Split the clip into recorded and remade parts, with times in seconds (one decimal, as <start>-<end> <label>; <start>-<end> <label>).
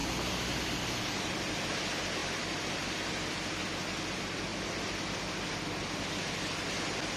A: 0.0-2.2 recorded; 2.2-2.7 remade; 2.7-7.2 recorded